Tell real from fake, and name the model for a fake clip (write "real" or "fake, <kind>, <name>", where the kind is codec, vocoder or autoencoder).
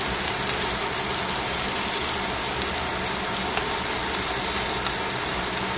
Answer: real